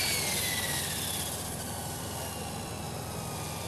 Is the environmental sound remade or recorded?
recorded